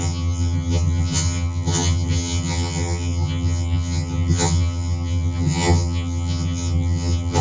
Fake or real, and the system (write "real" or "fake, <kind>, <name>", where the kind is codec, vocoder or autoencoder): fake, vocoder, HiFi-GAN